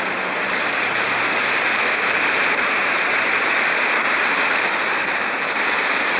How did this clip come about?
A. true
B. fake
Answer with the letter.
B